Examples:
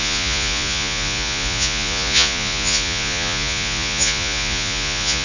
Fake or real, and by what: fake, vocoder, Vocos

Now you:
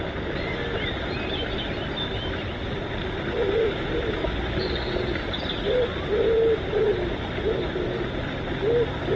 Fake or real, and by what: real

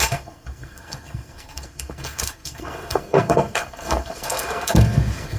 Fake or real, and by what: fake, codec, SNAC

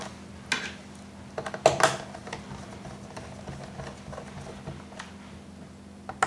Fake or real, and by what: real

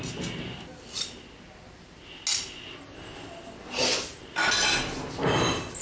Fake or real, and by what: real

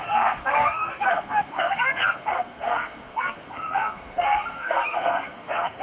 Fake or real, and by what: fake, codec, SNAC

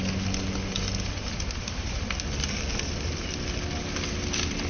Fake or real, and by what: real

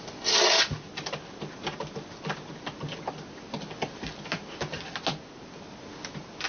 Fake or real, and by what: real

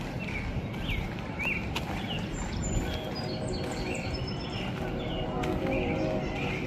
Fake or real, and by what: real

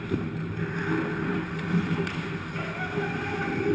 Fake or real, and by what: real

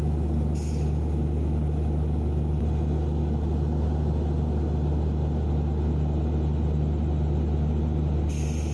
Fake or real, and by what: real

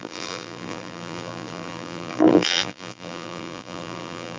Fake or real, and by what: fake, vocoder, BigVGAN v2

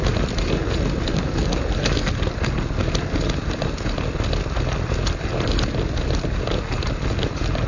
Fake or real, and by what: real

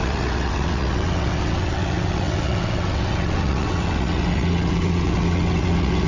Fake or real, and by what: fake, vocoder, WaveNeXt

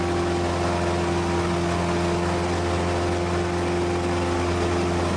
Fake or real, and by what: real